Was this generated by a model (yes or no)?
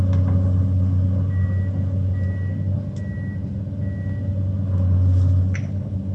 no